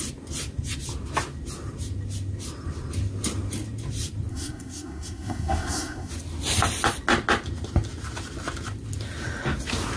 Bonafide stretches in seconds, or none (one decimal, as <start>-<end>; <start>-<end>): 0.0-4.3; 6.1-10.0